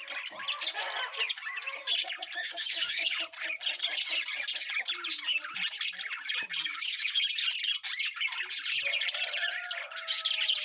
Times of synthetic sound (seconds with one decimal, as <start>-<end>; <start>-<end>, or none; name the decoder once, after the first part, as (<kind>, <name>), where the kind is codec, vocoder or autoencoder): 2.4-3.2 (codec, DAC); 6.6-7.2